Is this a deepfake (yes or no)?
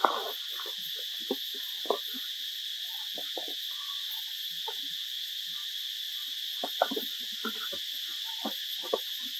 no